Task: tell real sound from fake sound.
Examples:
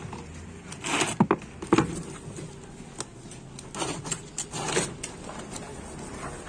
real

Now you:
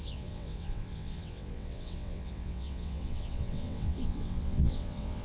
fake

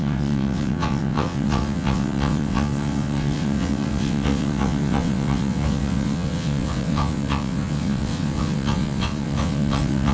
fake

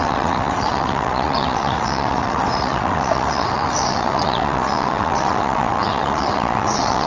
fake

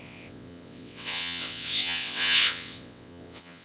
fake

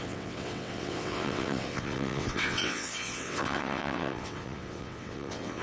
fake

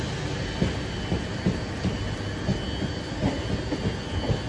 real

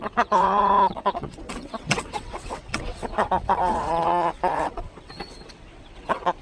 fake